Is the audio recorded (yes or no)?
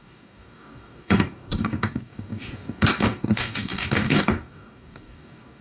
no